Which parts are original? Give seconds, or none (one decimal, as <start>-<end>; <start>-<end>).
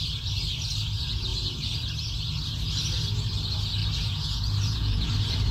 0.0-3.8; 5.1-5.5